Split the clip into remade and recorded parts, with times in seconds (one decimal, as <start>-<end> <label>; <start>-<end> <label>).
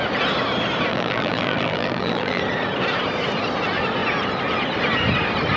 0.0-0.9 recorded; 0.9-2.4 remade; 2.4-5.6 recorded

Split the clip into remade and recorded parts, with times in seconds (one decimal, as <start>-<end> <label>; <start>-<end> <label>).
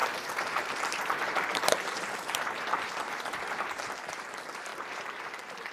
0.0-5.7 remade